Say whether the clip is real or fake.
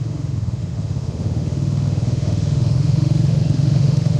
fake